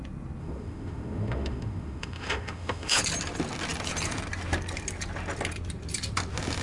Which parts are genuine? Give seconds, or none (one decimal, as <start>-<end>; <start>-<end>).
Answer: 0.0-0.4; 3.0-6.6